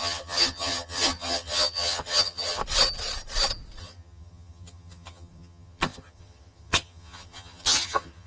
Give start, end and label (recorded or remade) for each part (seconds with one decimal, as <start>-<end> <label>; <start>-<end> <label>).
0.0-2.6 remade; 2.6-3.8 recorded; 3.8-8.3 remade